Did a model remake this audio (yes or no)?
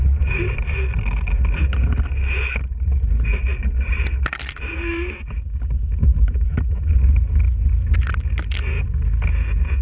no